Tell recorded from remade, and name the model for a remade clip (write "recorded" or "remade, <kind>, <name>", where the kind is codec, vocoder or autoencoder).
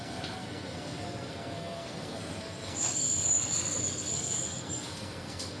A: remade, codec, SNAC